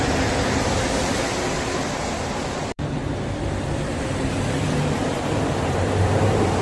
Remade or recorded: remade